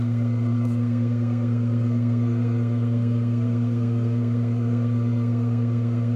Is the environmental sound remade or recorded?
remade